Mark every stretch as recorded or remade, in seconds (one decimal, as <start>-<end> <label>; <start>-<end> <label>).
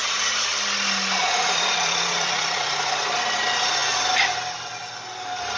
0.0-0.5 remade; 0.5-1.2 recorded; 1.2-3.1 remade; 3.1-5.6 recorded